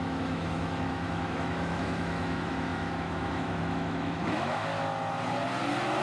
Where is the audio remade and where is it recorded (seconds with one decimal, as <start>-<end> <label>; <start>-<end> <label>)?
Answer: 0.0-4.7 remade; 4.7-6.0 recorded